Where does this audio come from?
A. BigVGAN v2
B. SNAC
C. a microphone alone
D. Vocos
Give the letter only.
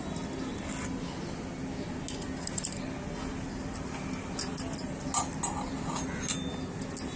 C